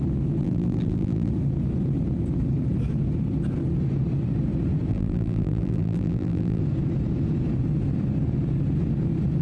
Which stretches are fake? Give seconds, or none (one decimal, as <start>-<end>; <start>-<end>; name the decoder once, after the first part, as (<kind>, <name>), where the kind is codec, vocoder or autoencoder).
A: 0.4-1.3 (vocoder, BigVGAN v2); 4.9-6.6